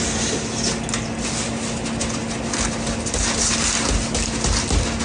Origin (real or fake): real